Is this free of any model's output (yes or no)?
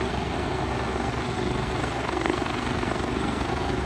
no